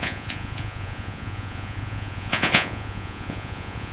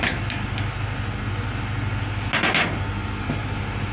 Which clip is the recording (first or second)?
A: second